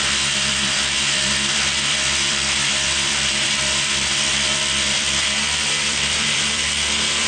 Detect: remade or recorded remade